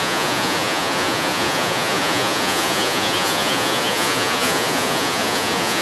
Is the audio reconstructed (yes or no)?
yes